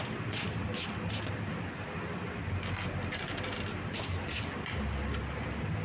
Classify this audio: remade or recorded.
recorded